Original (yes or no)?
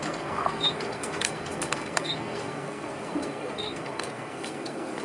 no